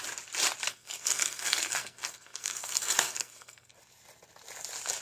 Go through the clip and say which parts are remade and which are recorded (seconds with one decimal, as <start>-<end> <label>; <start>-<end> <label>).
0.0-0.7 recorded; 0.7-3.7 remade; 3.7-5.0 recorded